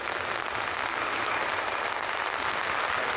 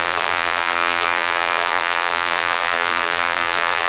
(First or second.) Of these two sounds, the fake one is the second